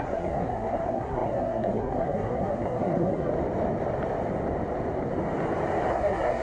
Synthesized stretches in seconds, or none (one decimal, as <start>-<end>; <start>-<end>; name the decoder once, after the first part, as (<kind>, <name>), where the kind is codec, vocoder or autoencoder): 0.0-3.3 (codec, SNAC); 5.9-6.4